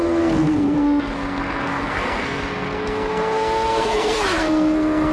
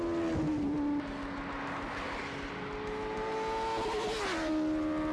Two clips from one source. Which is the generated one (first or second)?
first